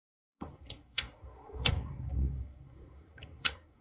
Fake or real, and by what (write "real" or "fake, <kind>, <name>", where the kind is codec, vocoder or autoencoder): fake, codec, SNAC